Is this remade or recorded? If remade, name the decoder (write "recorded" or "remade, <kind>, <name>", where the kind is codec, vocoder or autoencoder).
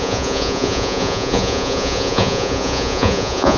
remade, vocoder, Vocos